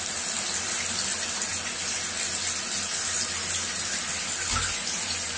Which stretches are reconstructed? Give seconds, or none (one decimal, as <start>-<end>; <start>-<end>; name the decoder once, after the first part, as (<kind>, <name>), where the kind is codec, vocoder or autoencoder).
none